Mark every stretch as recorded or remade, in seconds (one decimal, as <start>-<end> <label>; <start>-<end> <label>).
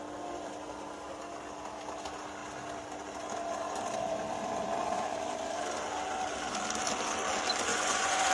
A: 0.0-7.7 recorded; 7.7-8.3 remade